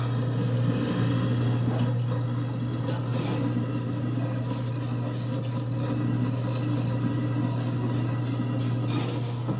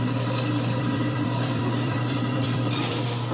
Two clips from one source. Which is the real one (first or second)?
first